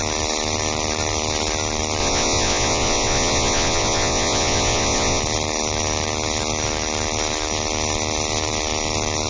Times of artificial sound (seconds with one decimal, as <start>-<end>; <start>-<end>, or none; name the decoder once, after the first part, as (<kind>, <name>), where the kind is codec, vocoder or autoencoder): 2.0-5.2 (vocoder, Vocos)